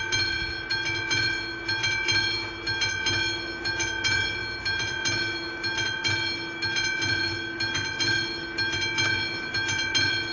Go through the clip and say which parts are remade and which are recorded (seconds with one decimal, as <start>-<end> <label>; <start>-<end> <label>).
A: 0.0-10.3 recorded